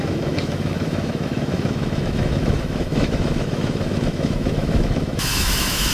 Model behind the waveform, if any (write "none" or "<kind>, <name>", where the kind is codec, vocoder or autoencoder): autoencoder, DAC-VAE